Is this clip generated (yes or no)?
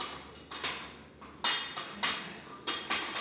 no